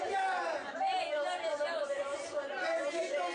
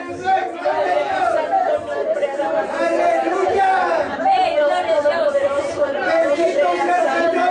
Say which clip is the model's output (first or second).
second